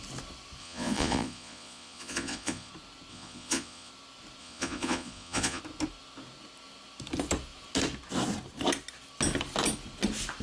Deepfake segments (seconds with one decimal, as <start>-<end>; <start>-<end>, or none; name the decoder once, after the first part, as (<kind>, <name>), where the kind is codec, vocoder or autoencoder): 0.6-2.7 (vocoder, Vocos); 3.1-3.9; 4.4-5.6